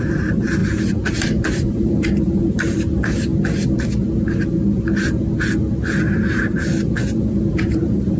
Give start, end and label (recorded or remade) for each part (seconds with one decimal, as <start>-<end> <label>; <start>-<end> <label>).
0.0-0.6 remade; 0.6-1.1 recorded; 1.1-3.3 remade; 3.3-6.0 recorded; 6.0-6.7 remade; 6.7-7.5 recorded; 7.5-8.2 remade